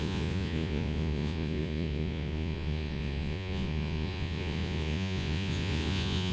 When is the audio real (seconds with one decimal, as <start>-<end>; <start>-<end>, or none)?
none